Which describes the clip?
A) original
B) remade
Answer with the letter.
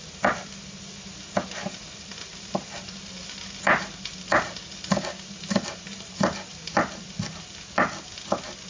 A